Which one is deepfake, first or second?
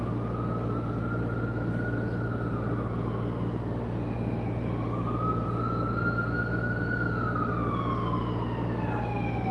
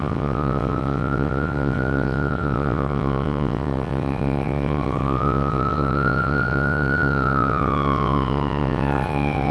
second